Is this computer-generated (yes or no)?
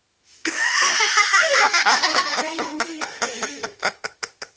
yes